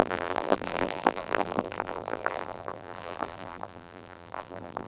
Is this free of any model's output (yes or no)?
no